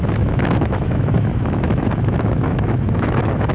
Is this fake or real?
fake